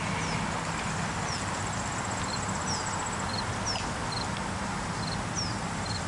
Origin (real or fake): real